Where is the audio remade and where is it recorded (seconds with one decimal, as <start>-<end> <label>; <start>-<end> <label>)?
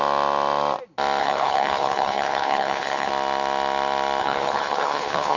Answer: 0.0-1.2 recorded; 1.2-3.1 remade; 3.1-4.2 recorded; 4.2-5.4 remade